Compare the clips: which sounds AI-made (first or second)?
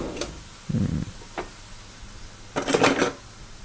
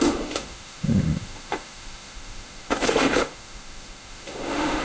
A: second